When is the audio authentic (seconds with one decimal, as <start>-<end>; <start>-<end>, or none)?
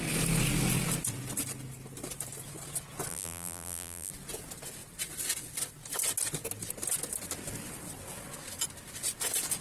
0.0-3.1; 4.1-9.6